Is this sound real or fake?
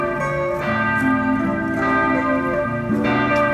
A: real